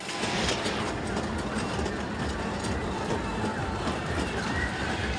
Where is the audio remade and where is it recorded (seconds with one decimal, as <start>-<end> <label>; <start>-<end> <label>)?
0.0-3.5 recorded; 3.5-4.6 remade; 4.6-5.2 recorded